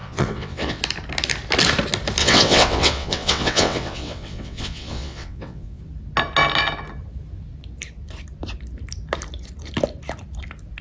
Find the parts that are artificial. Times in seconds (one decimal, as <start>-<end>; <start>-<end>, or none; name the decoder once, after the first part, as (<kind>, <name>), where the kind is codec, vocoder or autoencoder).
0.0-0.8 (vocoder, WaveNeXt); 2.2-5.8

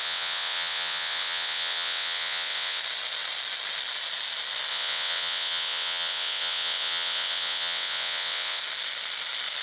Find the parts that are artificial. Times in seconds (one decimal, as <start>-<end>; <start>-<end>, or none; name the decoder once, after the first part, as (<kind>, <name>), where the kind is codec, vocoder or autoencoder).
0.0-2.8 (vocoder, WaveNeXt); 4.7-8.6

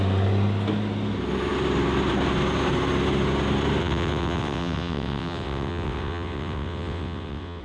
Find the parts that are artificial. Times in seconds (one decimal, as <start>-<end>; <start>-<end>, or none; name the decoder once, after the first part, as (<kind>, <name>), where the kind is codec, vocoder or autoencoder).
3.8-7.6 (vocoder, WaveNeXt)

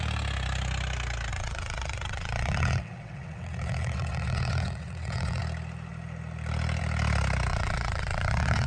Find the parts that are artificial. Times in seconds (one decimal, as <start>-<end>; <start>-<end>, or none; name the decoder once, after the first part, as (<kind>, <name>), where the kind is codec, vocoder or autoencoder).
1.3-5.4 (vocoder, WaveNeXt); 7.5-8.7

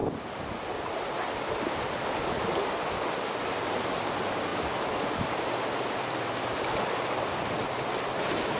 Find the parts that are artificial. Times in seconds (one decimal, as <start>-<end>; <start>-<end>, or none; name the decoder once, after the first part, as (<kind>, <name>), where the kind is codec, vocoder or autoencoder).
none

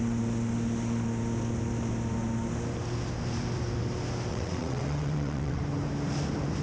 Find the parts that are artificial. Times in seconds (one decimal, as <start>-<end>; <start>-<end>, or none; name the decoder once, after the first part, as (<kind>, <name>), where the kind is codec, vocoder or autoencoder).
4.3-5.6 (vocoder, WaveNeXt)

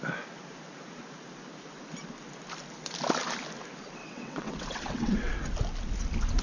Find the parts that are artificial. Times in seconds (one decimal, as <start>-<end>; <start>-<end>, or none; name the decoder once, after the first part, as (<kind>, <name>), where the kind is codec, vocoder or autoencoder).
4.0-5.5 (vocoder, WaveNeXt)

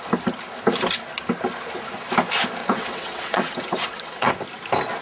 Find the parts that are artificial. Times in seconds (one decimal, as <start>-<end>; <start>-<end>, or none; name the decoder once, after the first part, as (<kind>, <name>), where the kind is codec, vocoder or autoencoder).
2.6-4.3 (vocoder, WaveNeXt)